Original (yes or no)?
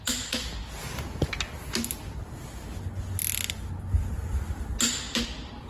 yes